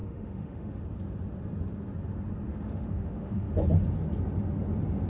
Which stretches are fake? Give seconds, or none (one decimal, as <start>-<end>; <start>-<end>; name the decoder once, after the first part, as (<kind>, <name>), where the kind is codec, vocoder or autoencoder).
0.0-0.7 (autoencoder, DAC-VAE); 2.5-3.5